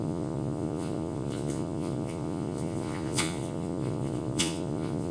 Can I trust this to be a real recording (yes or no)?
no